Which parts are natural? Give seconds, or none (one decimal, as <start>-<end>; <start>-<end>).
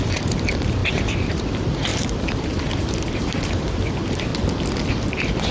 0.8-1.3; 4.3-4.9